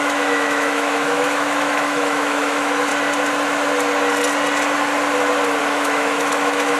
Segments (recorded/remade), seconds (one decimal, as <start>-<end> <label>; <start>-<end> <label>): 0.0-2.9 remade; 2.9-5.6 recorded; 5.6-6.8 remade